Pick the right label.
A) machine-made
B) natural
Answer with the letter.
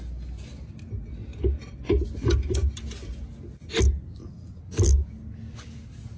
B